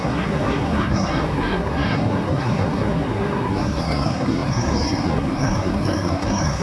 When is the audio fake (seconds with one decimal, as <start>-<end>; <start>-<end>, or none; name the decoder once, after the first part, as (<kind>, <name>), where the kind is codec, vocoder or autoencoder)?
0.0-6.6 (codec, SNAC)